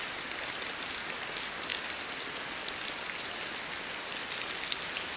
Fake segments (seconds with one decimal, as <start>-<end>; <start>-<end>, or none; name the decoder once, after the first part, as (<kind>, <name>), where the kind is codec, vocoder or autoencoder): none